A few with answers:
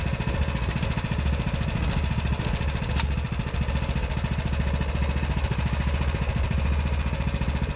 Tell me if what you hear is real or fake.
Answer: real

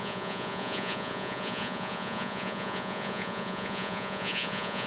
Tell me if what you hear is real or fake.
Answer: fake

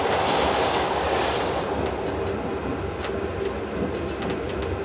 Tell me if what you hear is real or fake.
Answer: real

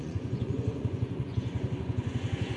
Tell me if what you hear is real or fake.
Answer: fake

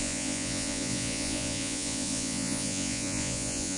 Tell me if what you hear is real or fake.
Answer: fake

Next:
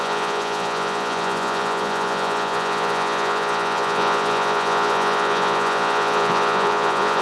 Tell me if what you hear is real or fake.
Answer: fake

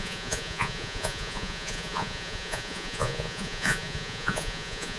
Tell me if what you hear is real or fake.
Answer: fake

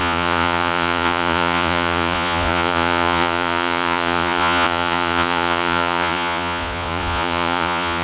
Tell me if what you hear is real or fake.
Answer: fake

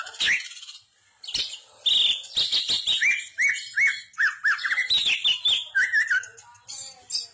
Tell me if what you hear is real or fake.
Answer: real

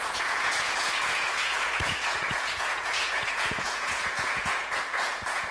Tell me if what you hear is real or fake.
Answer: fake